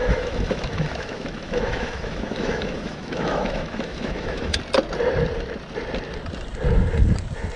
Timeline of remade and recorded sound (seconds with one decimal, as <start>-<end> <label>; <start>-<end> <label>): 0.0-4.6 remade; 4.6-7.6 recorded